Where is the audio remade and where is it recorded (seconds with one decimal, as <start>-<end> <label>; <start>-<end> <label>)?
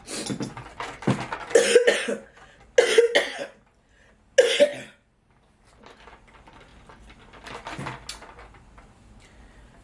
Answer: 0.0-9.8 recorded